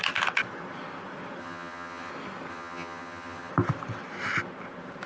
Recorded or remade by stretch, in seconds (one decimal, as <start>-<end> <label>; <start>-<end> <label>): 0.0-1.4 recorded; 1.4-2.1 remade; 2.1-2.5 recorded; 2.5-3.5 remade; 3.5-5.1 recorded